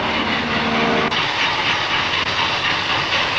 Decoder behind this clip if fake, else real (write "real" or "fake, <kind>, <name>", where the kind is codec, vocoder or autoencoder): real